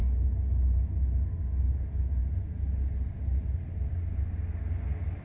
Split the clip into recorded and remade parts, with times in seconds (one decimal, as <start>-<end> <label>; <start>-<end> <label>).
0.0-5.2 recorded